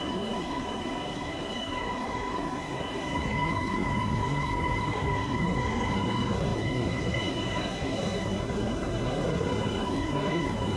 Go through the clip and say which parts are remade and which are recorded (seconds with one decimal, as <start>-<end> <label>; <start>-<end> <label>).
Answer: 0.0-10.8 remade